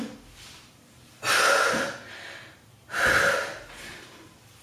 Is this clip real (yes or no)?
yes